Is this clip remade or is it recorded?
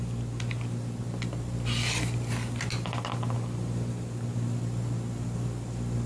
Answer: recorded